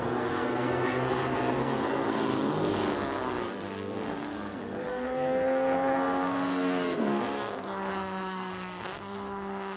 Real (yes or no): no